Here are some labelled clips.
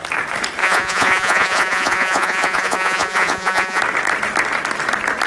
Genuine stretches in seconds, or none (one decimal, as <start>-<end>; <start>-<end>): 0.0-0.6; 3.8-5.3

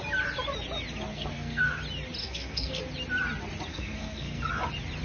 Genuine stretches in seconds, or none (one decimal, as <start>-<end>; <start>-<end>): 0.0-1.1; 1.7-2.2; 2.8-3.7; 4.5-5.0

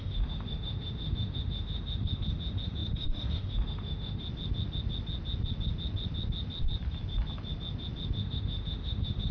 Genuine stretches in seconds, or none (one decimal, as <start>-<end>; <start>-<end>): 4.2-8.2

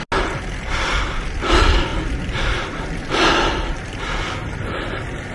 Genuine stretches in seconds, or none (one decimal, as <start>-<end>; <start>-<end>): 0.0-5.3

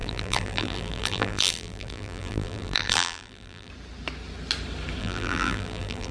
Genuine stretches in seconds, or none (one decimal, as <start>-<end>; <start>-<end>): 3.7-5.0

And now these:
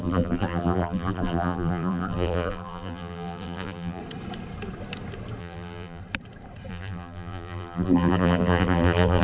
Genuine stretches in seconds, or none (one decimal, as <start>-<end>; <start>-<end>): 4.0-5.4; 6.0-6.7

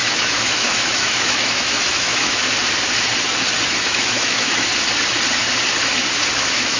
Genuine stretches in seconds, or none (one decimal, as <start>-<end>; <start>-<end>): 2.4-3.8; 4.7-6.3

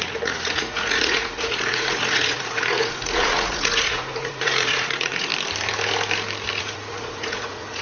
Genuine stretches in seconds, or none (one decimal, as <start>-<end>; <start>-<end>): 5.3-6.6